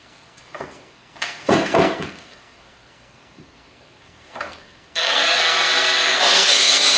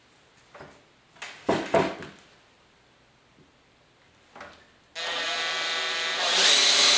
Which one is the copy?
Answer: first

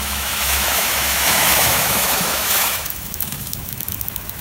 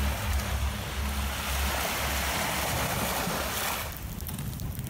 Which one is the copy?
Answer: first